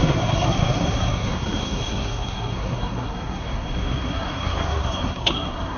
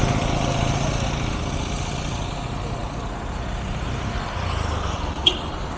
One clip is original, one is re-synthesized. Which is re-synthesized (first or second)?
first